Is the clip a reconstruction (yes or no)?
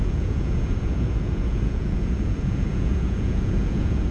yes